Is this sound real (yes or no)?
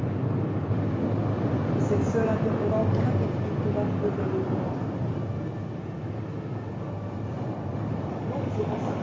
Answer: yes